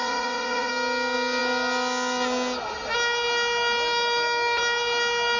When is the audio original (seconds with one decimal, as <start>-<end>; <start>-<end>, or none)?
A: 0.7-5.4